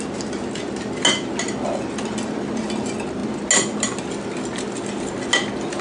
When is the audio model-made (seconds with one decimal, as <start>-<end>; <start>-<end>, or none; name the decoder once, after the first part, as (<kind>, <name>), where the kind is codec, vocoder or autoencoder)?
none